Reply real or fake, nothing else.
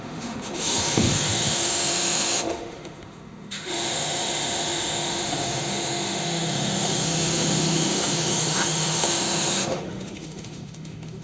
fake